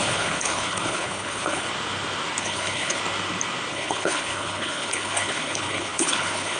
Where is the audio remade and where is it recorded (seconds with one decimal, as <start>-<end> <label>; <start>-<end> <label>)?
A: 0.0-1.7 remade; 1.7-2.4 recorded; 2.4-3.0 remade; 3.0-3.7 recorded; 3.7-6.6 remade